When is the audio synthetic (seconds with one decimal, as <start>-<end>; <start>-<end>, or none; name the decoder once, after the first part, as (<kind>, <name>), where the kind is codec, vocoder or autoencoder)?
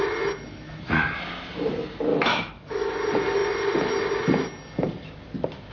0.5-1.1 (autoencoder, DAC-VAE); 2.1-2.9